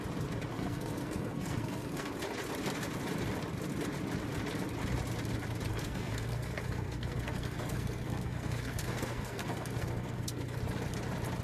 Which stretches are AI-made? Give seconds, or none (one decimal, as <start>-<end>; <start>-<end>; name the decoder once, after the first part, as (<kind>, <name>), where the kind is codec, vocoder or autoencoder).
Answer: 0.5-2.1 (codec, SNAC); 5.7-10.6